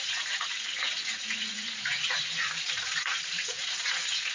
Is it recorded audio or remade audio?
remade